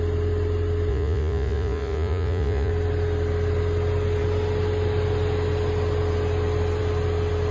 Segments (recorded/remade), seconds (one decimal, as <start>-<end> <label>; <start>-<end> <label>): 0.0-0.9 recorded; 0.9-2.7 remade; 2.7-7.5 recorded